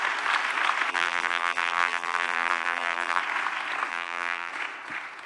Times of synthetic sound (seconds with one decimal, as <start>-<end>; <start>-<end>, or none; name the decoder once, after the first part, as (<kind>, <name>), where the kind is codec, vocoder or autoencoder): 0.9-3.2 (vocoder, BigVGAN v2); 3.9-4.5